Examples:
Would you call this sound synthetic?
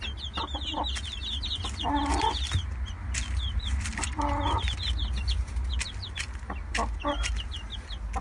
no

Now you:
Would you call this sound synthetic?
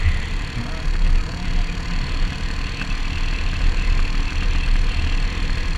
no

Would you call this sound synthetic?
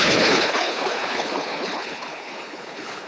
yes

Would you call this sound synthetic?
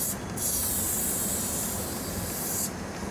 no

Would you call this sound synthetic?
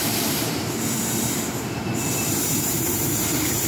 yes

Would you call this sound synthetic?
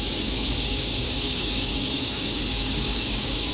yes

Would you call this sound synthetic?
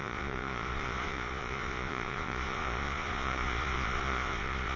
yes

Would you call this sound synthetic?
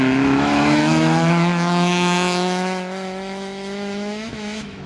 yes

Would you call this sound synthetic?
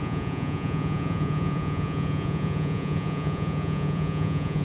yes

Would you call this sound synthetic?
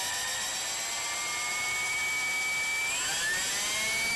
no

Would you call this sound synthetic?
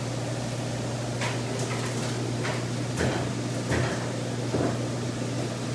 no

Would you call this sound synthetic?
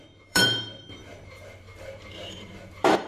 yes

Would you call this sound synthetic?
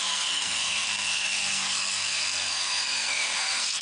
yes